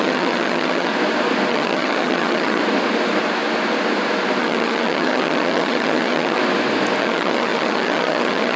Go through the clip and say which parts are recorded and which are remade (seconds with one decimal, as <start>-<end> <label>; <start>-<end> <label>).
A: 0.0-0.9 remade; 0.9-1.5 recorded; 1.5-2.6 remade; 2.6-4.4 recorded; 4.4-6.4 remade; 6.4-7.0 recorded; 7.0-8.6 remade